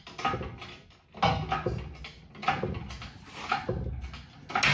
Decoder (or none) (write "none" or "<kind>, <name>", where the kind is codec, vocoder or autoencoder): none